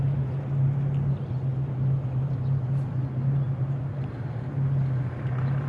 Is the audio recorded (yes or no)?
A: yes